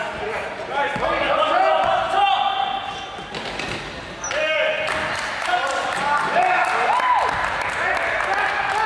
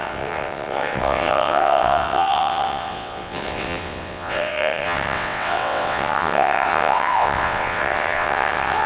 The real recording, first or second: first